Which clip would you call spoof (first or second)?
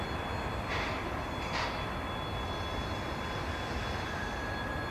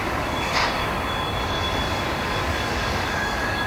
second